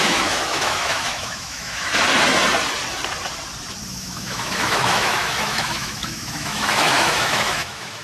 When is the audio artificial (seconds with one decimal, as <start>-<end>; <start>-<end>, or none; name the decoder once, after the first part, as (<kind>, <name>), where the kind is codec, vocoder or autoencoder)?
0.0-1.9 (autoencoder, DAC-VAE); 3.9-8.0